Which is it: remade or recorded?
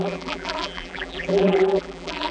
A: remade